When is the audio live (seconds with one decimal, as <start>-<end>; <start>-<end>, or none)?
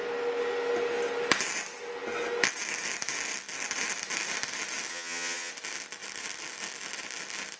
0.0-4.9; 5.5-7.6